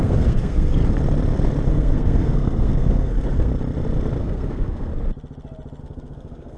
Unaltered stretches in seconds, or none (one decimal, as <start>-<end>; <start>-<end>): 0.8-1.7; 3.5-4.2; 4.9-5.8